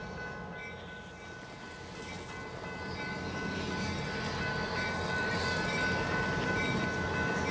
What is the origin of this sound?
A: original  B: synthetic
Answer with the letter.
A